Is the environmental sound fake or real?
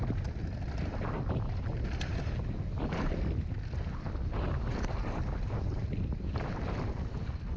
real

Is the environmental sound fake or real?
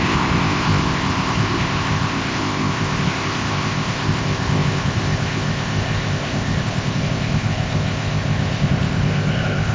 fake